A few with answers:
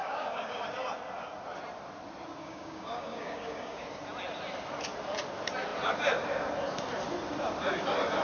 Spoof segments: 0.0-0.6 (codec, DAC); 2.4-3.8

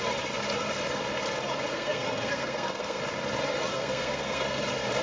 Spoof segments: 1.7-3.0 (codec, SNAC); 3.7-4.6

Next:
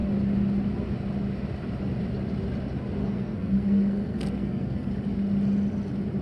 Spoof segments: 3.0-4.9 (codec, SNAC)

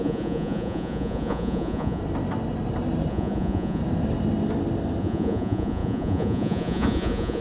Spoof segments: 0.0-2.0 (vocoder, Vocos); 3.1-3.8; 5.0-7.4

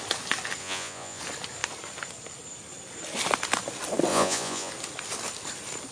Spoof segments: 0.6-1.2 (vocoder, Vocos); 4.1-4.7